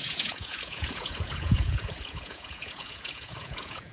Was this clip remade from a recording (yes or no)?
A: yes